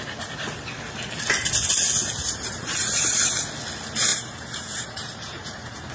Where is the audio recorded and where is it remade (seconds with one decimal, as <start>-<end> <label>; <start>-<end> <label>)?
0.0-2.2 recorded; 2.2-3.2 remade; 3.2-4.1 recorded; 4.1-5.9 remade